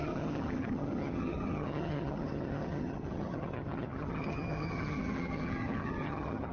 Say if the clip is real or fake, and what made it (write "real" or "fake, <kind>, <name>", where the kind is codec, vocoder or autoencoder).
fake, vocoder, HiFi-GAN